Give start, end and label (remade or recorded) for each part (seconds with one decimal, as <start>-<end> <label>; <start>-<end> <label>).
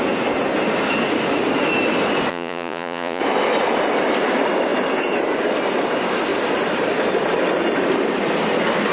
0.0-2.3 recorded; 2.3-3.2 remade; 3.2-8.9 recorded